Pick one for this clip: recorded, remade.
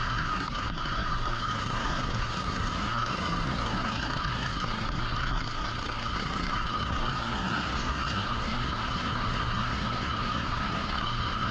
remade